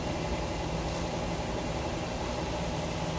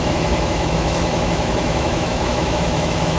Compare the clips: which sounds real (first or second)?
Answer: first